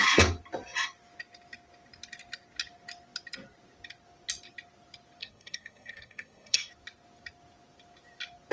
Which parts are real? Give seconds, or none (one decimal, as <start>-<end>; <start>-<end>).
0.0-5.2; 6.7-8.5